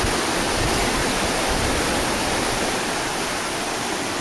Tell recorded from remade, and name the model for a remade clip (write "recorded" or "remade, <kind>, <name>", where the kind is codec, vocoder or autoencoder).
recorded